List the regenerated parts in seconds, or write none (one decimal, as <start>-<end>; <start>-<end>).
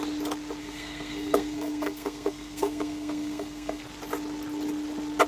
0.6-3.8